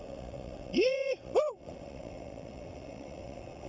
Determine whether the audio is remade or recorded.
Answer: remade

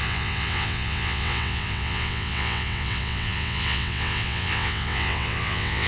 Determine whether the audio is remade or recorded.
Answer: remade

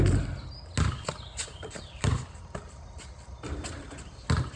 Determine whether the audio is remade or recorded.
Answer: recorded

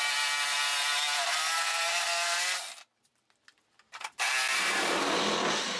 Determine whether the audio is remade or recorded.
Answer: recorded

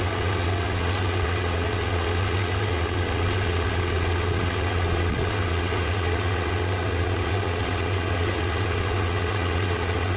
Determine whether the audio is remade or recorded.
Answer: remade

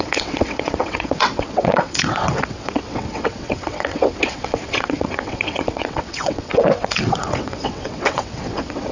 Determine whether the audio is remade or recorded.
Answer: remade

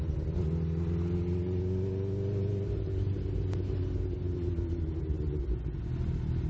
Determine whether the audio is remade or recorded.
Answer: recorded